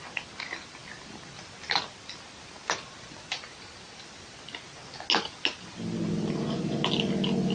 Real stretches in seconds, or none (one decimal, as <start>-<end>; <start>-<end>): 0.0-7.5